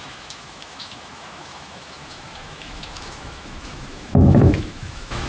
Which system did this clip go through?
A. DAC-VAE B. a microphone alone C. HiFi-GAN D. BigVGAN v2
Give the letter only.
A